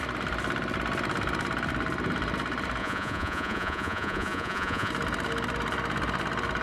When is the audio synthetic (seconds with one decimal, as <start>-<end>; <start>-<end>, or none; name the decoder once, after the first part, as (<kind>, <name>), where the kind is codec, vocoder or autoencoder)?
2.8-4.9 (vocoder, Vocos)